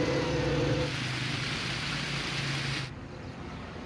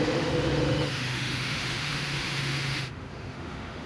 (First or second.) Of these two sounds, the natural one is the first